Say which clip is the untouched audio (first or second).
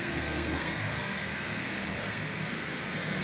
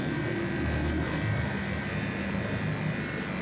second